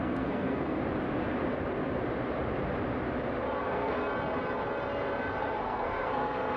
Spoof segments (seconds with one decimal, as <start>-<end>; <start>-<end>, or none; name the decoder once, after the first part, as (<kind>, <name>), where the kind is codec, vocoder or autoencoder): 0.0-0.8 (codec, SNAC); 3.6-4.0; 5.4-6.6